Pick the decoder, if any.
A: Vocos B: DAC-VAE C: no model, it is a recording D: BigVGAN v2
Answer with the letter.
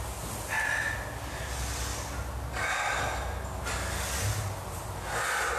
C